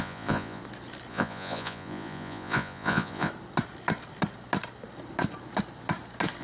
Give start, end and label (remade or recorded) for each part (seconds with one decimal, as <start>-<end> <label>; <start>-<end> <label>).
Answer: 0.0-0.6 remade; 0.6-1.1 recorded; 1.1-3.3 remade; 3.3-6.4 recorded

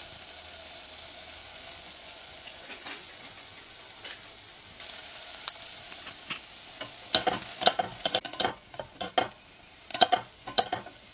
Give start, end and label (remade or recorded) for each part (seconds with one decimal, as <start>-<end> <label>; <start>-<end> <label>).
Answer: 0.0-1.4 recorded; 1.4-3.8 remade; 3.8-7.4 recorded; 7.4-9.1 remade; 9.1-9.9 recorded; 9.9-11.1 remade

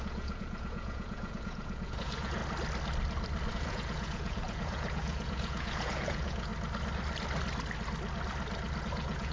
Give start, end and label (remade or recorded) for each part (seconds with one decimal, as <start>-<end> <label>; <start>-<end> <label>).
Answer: 0.0-2.4 remade; 2.4-3.5 recorded; 3.5-6.5 remade; 6.5-8.8 recorded; 8.8-9.3 remade

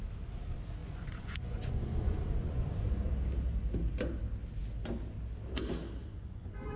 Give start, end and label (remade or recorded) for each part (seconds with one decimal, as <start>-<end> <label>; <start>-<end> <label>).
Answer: 0.0-0.8 recorded; 0.8-3.1 remade; 3.1-6.0 recorded; 6.0-6.8 remade

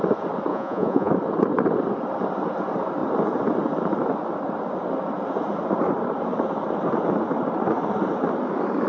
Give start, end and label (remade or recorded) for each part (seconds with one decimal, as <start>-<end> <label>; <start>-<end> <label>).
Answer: 0.0-0.5 recorded; 0.5-1.1 remade; 1.1-8.9 recorded

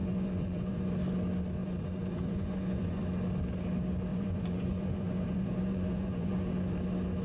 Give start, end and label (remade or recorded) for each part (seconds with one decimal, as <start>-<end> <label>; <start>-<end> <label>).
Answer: 0.0-0.9 remade; 0.9-1.6 recorded; 1.6-3.0 remade; 3.0-4.1 recorded; 4.1-6.4 remade; 6.4-7.2 recorded